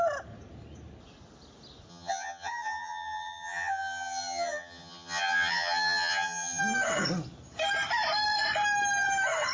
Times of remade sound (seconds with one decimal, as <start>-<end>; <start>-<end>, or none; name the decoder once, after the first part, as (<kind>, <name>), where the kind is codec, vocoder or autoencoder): 1.9-6.6 (vocoder, HiFi-GAN)